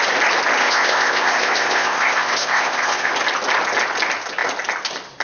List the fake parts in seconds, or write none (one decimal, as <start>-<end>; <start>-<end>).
0.6-3.1